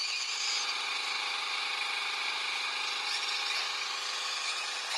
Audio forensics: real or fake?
real